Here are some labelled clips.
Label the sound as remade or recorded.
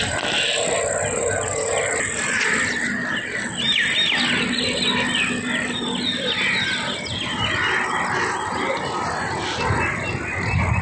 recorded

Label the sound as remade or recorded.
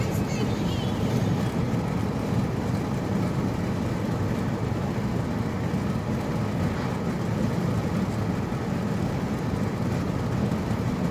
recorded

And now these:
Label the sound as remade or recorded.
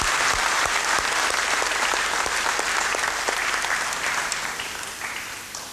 remade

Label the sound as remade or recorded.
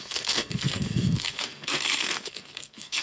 remade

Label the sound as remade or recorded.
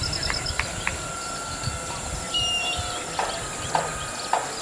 recorded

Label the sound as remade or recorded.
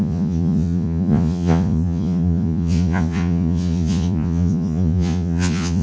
remade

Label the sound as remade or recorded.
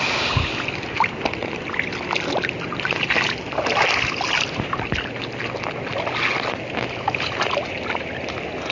recorded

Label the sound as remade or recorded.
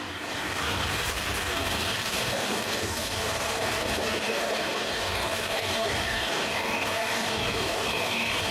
remade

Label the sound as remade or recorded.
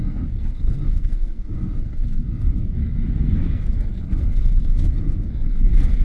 remade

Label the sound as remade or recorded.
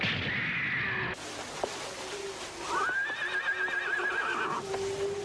recorded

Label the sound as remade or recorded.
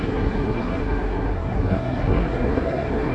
remade